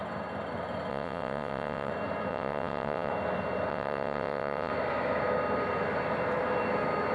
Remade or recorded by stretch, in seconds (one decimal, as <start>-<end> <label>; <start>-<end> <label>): 0.0-0.9 recorded; 0.9-1.9 remade; 1.9-2.3 recorded; 2.3-3.1 remade; 3.1-3.7 recorded; 3.7-4.7 remade; 4.7-7.1 recorded